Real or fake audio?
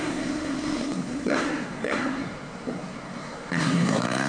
fake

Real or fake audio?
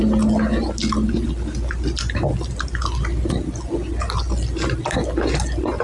real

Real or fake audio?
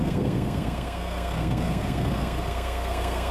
fake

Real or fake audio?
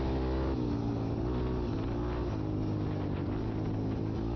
real